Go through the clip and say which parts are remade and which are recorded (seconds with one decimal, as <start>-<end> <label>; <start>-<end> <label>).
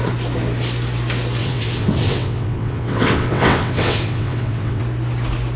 0.0-1.4 recorded; 1.4-4.8 remade; 4.8-5.6 recorded